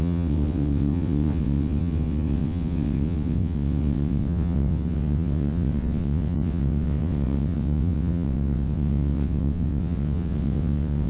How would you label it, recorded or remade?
remade